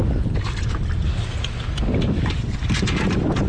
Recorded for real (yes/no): yes